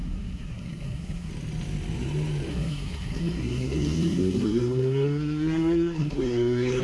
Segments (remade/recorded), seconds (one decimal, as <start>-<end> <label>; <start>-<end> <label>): 0.0-1.3 remade; 1.3-2.5 recorded; 2.5-6.8 remade